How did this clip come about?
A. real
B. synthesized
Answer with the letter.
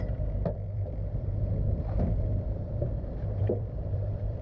B